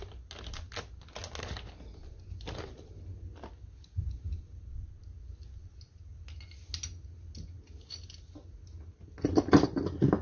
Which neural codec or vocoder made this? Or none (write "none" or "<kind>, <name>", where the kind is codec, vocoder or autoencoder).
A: none